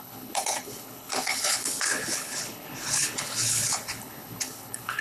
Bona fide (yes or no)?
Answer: no